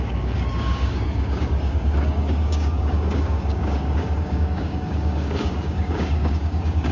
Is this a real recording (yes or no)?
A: no